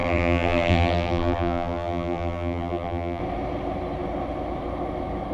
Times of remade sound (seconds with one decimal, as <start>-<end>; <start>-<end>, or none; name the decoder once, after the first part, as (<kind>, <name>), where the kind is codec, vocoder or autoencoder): 0.0-3.2 (vocoder, BigVGAN v2)